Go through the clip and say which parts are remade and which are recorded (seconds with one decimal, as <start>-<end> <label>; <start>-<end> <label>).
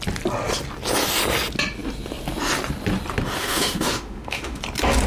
0.0-3.4 recorded; 3.4-4.6 remade; 4.6-5.1 recorded